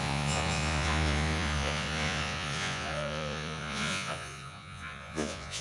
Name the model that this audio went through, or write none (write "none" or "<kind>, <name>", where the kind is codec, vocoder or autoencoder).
vocoder, Vocos